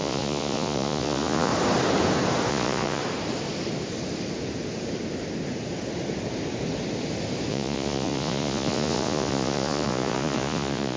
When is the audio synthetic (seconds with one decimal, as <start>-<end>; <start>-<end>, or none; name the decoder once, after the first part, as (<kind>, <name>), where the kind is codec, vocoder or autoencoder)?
0.0-1.5 (vocoder, Vocos); 2.5-3.0; 7.5-11.0